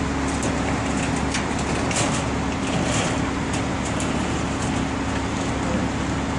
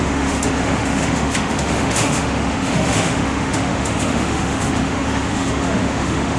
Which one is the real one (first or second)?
first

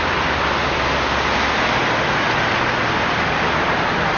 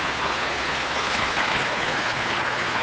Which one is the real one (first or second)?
first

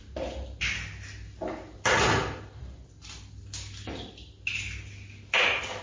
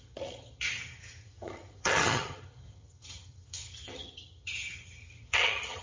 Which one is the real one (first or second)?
first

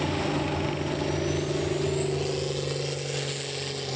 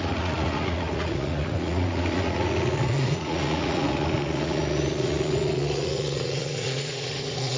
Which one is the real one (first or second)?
first